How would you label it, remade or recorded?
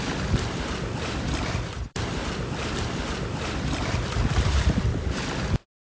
remade